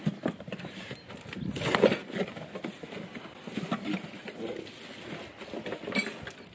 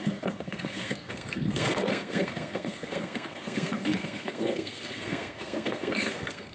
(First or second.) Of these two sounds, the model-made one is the second